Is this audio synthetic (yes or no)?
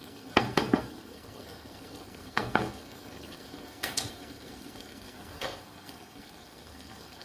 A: yes